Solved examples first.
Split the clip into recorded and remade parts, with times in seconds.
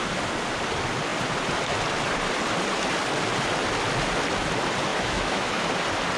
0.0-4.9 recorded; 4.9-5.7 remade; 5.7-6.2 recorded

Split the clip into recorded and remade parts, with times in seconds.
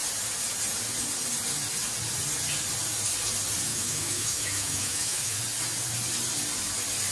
0.0-3.7 recorded; 3.7-5.4 remade; 5.4-7.1 recorded